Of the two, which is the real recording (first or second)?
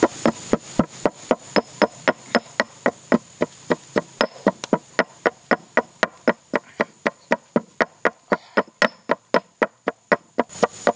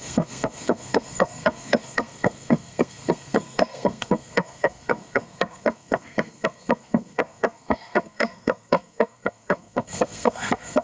first